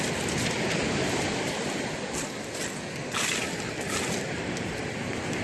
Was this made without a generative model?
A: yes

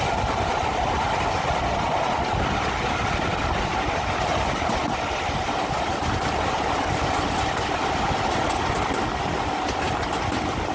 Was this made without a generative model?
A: yes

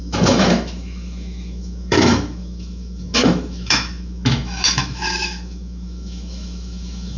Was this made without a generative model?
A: no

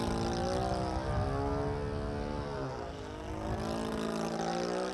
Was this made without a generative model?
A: yes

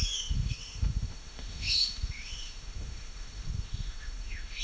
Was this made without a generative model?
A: no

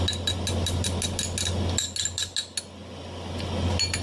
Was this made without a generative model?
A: yes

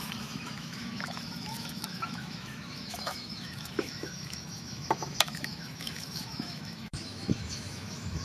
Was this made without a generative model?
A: no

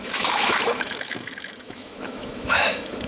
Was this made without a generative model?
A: no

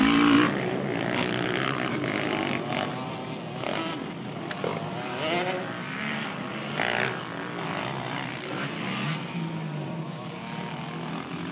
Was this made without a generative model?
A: yes